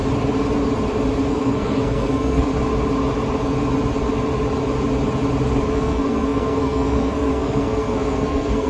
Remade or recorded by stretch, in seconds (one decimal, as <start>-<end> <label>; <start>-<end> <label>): 0.0-1.3 recorded; 1.3-2.5 remade; 2.5-5.7 recorded; 5.7-8.7 remade